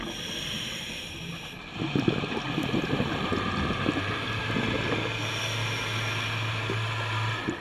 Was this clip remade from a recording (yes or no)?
no